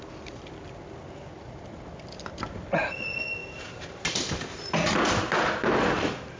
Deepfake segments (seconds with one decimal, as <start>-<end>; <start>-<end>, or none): none

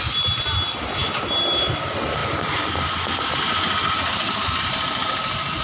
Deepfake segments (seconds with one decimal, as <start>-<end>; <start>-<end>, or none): none

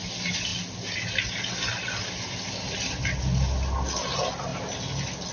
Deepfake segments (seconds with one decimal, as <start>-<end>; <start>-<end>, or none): none

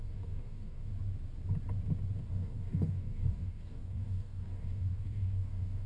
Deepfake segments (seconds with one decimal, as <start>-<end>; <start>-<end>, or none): 0.0-0.9; 2.3-5.9

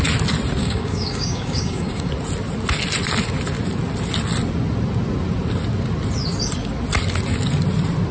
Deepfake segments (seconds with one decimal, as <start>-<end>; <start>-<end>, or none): 0.6-2.1